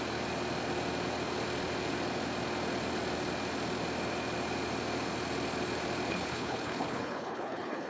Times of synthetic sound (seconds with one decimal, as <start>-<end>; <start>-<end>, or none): 6.1-7.9